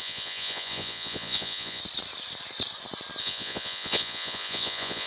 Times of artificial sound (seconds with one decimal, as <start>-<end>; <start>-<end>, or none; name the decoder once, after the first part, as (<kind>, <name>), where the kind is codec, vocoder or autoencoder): 0.0-1.8 (vocoder, Vocos); 3.2-5.1